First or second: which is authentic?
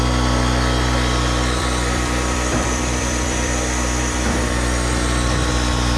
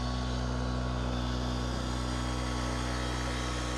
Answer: second